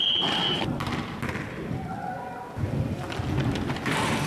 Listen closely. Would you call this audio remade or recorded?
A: recorded